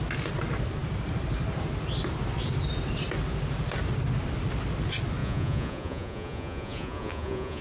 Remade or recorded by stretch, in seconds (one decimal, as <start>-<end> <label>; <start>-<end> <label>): 0.0-5.2 recorded; 5.2-7.6 remade